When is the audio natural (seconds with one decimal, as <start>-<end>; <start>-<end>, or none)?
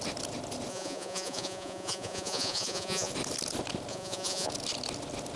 0.0-0.7; 3.1-3.9; 4.5-5.4